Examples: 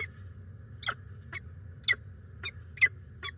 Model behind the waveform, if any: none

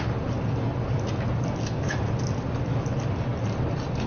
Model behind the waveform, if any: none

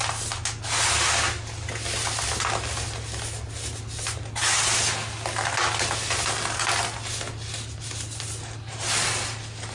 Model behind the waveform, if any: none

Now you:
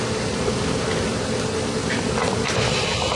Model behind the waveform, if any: vocoder, BigVGAN v2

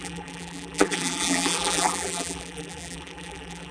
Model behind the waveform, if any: vocoder, BigVGAN v2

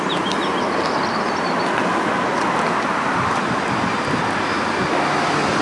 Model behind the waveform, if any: none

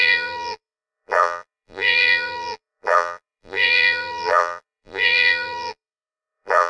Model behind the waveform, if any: vocoder, BigVGAN v2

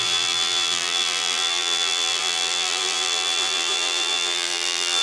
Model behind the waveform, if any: vocoder, BigVGAN v2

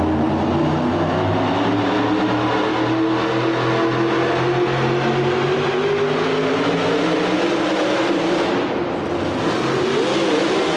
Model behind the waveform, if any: none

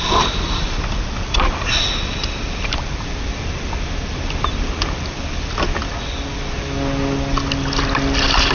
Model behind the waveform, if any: none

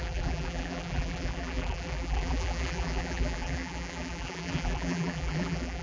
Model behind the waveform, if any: vocoder, BigVGAN v2